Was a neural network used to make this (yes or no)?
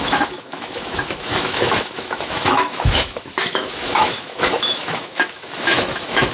yes